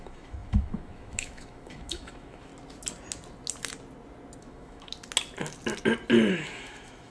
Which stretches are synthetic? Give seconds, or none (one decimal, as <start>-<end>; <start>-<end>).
0.0-2.5; 4.4-4.9; 6.3-7.1